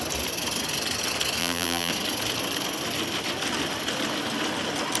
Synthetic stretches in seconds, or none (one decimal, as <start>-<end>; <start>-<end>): 1.4-1.9